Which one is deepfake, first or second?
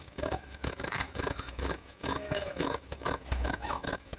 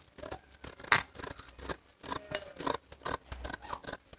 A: first